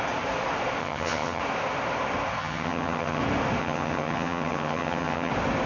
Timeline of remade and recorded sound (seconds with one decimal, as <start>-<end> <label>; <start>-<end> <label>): 0.0-0.8 recorded; 0.8-1.4 remade; 1.4-2.4 recorded; 2.4-3.2 remade; 3.2-3.6 recorded; 3.6-5.3 remade; 5.3-5.7 recorded